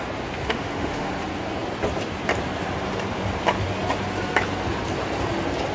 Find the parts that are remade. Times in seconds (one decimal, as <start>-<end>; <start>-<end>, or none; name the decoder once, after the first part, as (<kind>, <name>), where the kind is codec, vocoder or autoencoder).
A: 0.4-1.1 (autoencoder, DAC-VAE)